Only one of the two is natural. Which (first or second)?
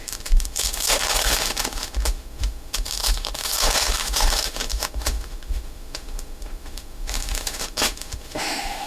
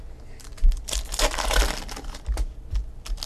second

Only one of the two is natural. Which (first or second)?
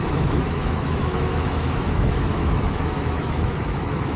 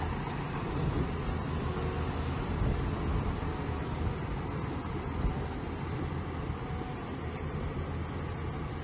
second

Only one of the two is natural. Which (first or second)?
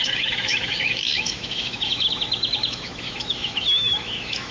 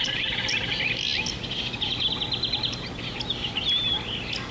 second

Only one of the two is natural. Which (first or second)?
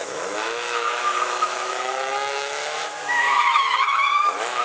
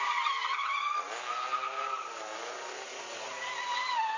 second